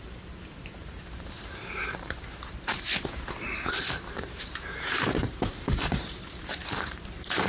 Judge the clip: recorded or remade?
remade